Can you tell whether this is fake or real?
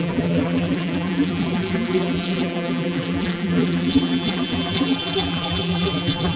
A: fake